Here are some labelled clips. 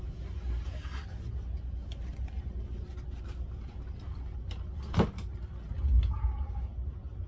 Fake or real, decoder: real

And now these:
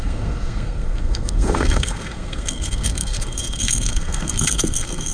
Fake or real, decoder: fake, codec, SNAC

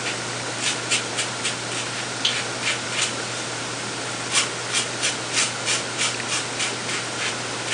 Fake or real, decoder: real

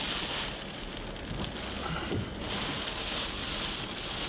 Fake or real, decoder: real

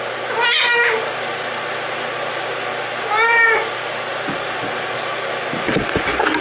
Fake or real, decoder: real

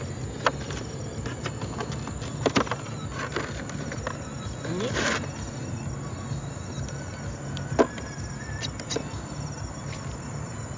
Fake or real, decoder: real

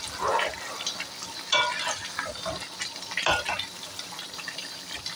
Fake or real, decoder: real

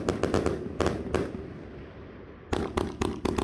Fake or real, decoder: real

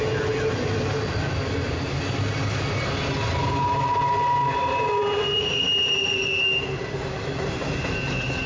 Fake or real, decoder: real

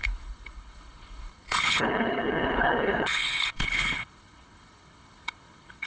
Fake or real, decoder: fake, codec, HILCodec